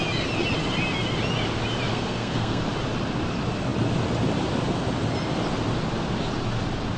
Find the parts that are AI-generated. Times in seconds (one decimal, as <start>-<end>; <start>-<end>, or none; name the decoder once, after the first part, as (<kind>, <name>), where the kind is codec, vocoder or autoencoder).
1.9-2.6 (codec, SNAC)